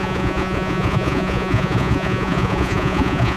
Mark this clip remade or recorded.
remade